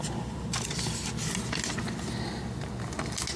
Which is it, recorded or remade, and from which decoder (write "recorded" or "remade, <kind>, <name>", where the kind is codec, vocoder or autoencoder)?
recorded